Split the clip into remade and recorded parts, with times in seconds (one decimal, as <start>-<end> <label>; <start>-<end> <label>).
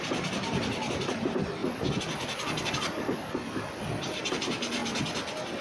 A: 0.0-1.6 remade; 1.6-4.3 recorded; 4.3-4.8 remade; 4.8-5.6 recorded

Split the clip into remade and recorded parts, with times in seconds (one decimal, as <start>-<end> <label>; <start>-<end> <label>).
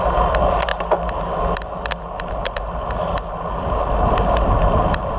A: 0.0-0.7 remade; 0.7-3.8 recorded; 3.8-5.2 remade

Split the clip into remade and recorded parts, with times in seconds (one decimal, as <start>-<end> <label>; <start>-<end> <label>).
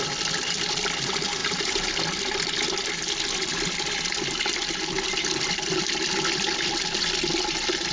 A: 0.0-1.4 recorded; 1.4-1.9 remade; 1.9-7.9 recorded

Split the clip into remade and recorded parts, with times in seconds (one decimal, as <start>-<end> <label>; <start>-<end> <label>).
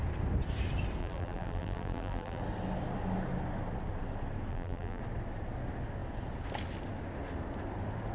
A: 0.0-1.0 recorded; 1.0-2.4 remade; 2.4-4.5 recorded; 4.5-5.0 remade; 5.0-8.1 recorded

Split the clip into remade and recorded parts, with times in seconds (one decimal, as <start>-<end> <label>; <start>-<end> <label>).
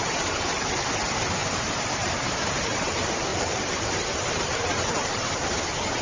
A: 0.0-1.4 recorded; 1.4-2.1 remade; 2.1-3.3 recorded; 3.3-5.3 remade; 5.3-6.0 recorded